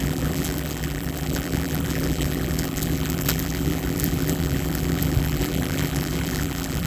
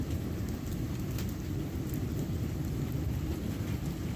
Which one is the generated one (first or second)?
first